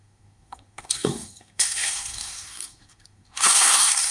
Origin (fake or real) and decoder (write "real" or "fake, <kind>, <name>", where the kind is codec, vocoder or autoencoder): fake, codec, SNAC